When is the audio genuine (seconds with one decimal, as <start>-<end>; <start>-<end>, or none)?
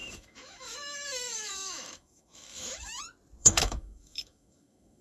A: 3.0-3.4